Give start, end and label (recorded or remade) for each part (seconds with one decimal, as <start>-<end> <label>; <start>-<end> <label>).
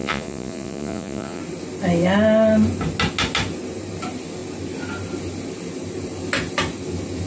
0.0-1.4 remade; 1.4-7.3 recorded